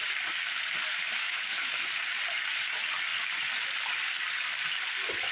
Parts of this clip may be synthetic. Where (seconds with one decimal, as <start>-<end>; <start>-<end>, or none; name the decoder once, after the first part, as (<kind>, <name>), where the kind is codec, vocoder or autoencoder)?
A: 1.1-1.9 (autoencoder, DAC-VAE)